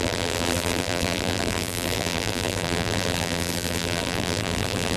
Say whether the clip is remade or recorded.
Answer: remade